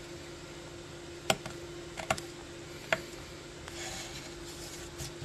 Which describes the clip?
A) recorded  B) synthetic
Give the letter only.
A